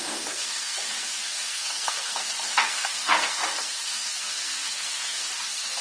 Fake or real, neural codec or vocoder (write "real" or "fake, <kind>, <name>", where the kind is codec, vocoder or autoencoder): fake, codec, SNAC